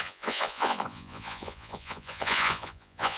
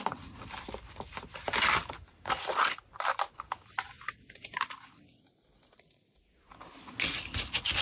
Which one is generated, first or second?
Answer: first